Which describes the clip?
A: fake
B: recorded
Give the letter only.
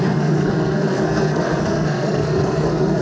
A